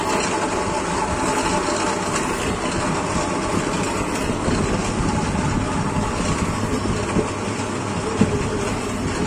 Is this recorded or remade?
recorded